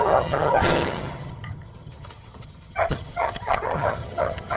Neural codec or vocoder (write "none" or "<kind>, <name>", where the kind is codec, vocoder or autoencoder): vocoder, HiFi-GAN